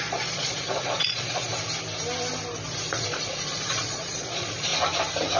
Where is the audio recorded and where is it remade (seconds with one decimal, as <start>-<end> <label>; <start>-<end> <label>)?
0.0-1.5 remade; 1.5-2.9 recorded; 2.9-4.7 remade; 4.7-5.4 recorded